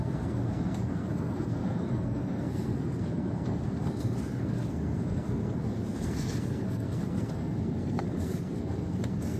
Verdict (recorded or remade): remade